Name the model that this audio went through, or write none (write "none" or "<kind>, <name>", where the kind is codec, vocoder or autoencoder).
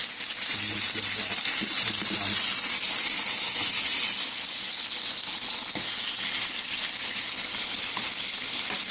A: none